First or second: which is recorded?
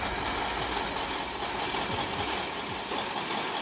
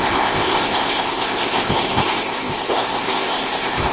first